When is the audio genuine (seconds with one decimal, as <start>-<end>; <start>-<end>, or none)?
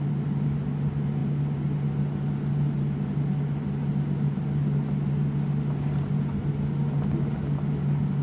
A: 0.0-8.2